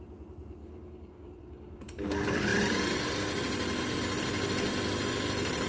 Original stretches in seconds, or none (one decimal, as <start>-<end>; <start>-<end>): 0.0-0.6; 1.8-5.7